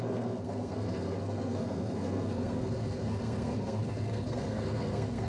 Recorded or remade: remade